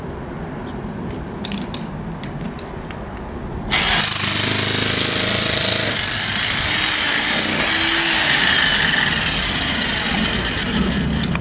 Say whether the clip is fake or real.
real